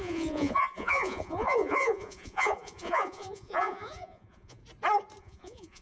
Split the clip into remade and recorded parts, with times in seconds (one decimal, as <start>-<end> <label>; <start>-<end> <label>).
0.0-4.6 remade; 4.6-5.2 recorded; 5.2-5.8 remade